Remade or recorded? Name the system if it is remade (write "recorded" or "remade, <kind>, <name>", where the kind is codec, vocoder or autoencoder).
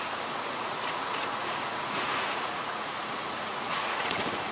remade, vocoder, Vocos